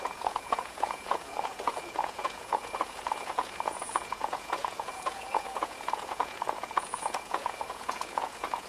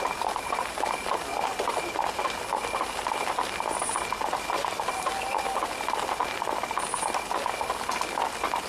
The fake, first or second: first